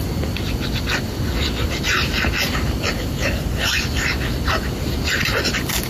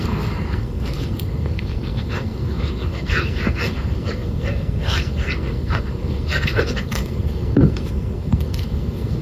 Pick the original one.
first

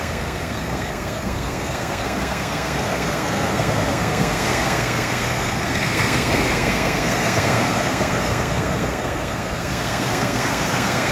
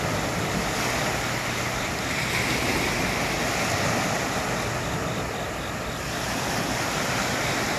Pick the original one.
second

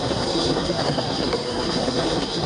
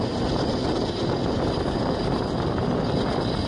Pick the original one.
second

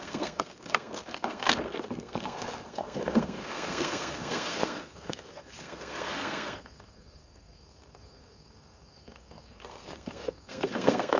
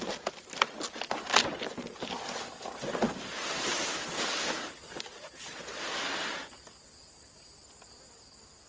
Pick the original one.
second